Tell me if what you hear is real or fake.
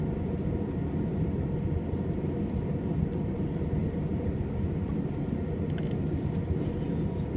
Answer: real